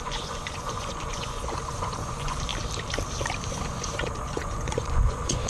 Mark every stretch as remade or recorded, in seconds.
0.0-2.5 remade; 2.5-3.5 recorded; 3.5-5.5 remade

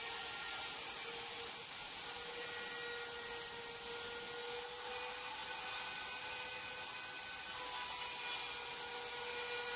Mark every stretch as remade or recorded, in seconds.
0.0-9.8 recorded

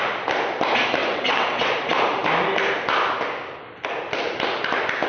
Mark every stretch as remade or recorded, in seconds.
0.0-1.0 recorded; 1.0-1.7 remade; 1.7-5.1 recorded

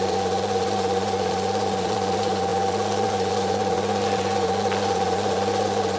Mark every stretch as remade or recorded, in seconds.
0.0-6.0 remade